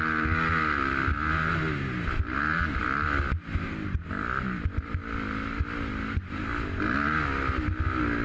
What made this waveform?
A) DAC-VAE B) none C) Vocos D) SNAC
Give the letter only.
B